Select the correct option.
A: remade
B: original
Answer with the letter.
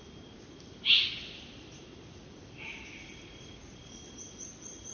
B